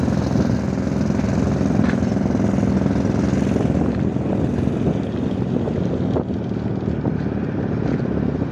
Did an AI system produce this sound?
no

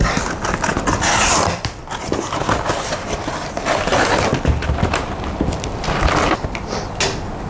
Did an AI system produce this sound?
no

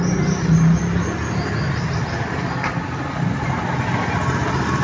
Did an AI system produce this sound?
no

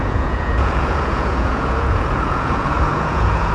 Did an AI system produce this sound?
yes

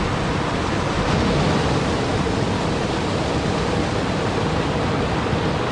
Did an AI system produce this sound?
no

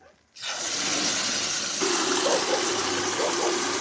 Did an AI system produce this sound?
no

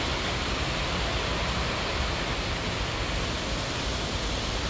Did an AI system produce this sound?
no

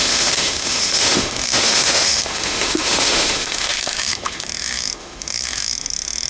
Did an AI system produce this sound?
yes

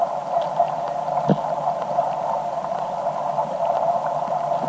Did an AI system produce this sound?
no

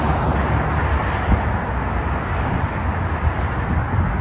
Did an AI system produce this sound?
no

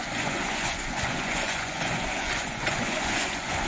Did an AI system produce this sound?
yes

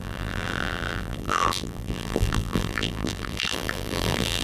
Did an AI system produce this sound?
yes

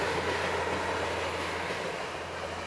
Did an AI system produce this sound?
no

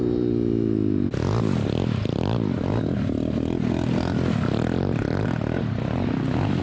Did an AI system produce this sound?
no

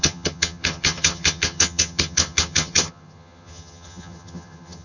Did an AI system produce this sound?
yes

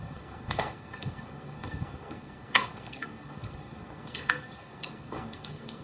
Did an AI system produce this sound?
yes